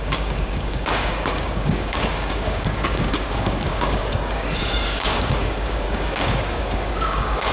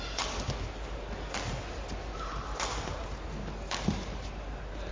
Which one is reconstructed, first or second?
first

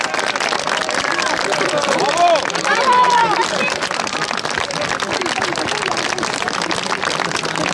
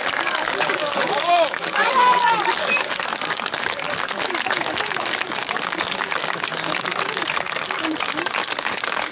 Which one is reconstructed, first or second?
second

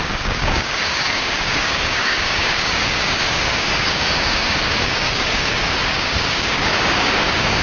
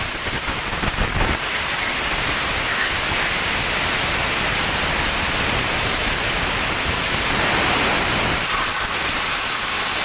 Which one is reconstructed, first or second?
first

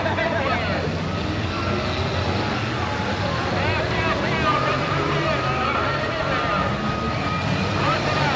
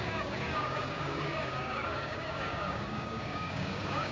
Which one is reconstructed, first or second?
second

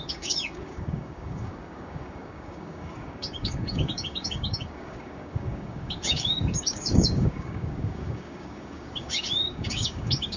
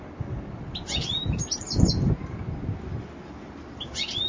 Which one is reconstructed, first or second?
first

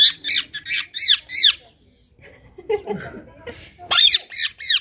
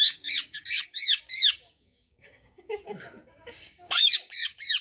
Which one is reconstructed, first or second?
second